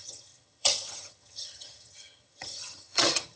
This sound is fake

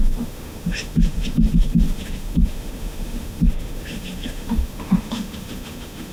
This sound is fake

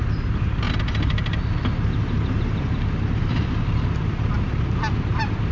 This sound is real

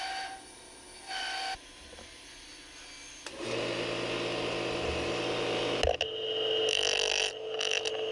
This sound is real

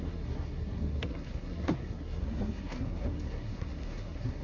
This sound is fake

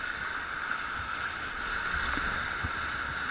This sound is real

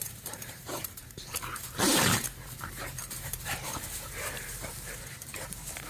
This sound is fake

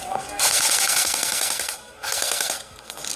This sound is fake